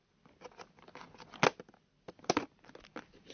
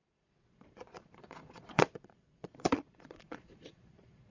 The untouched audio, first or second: first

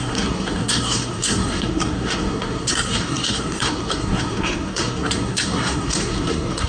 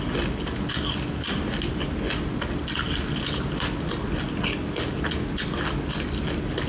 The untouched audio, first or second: second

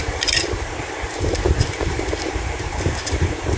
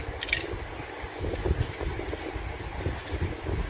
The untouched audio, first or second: second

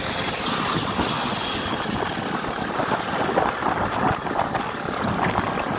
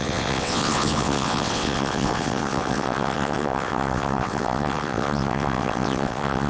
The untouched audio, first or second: first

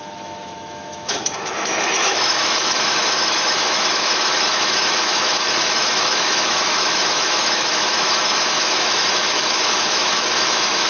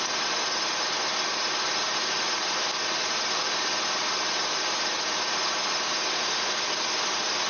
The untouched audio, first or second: second